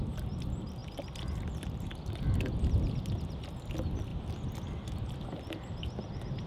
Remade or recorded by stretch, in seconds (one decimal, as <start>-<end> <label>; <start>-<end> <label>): 0.0-6.5 recorded